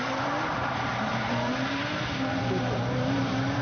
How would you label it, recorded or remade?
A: remade